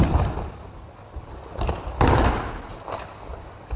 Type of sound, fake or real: real